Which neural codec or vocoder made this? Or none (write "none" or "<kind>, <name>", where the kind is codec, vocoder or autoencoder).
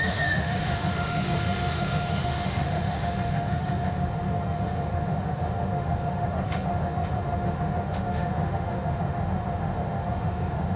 autoencoder, DAC-VAE